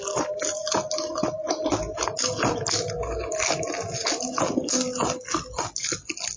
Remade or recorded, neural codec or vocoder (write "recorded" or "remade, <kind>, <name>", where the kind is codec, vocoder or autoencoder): recorded